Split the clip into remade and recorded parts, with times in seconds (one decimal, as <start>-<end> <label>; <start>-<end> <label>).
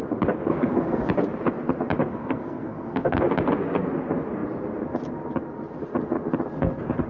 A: 0.0-0.5 recorded; 0.5-1.1 remade; 1.1-2.1 recorded; 2.1-3.2 remade; 3.2-7.1 recorded